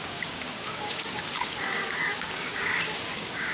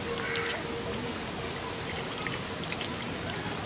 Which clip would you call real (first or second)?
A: second